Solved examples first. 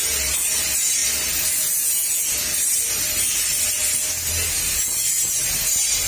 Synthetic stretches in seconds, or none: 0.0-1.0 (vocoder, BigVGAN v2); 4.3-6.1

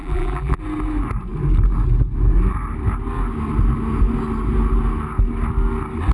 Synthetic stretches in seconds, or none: 0.0-0.6 (vocoder, BigVGAN v2)

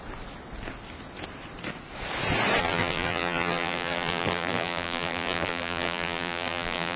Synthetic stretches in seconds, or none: 2.6-7.0 (vocoder, BigVGAN v2)